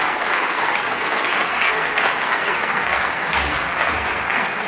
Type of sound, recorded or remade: remade